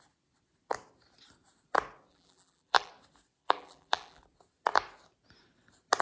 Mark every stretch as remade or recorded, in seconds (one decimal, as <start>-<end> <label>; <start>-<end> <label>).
0.0-2.1 recorded; 2.1-2.9 remade; 2.9-3.4 recorded; 3.4-4.2 remade; 4.2-6.0 recorded